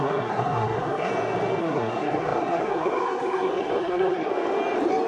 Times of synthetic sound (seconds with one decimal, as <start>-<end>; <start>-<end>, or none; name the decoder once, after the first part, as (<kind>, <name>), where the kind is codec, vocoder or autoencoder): 0.0-1.1 (codec, SNAC); 1.6-4.3